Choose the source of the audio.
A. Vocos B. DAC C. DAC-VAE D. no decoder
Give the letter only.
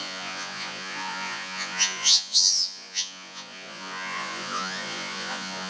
A